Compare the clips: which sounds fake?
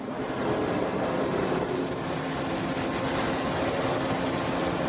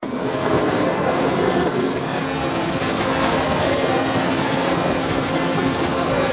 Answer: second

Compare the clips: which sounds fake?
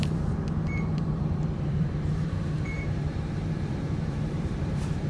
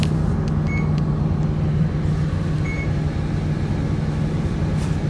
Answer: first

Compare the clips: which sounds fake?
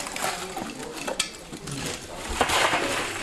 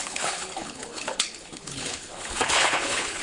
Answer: second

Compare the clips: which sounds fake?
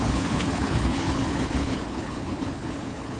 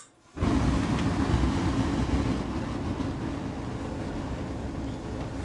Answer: first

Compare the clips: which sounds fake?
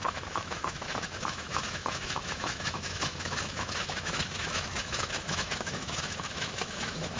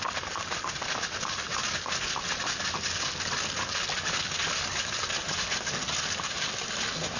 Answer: first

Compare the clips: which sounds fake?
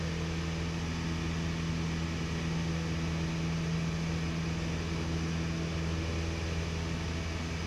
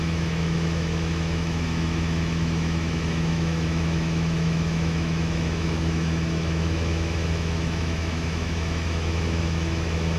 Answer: second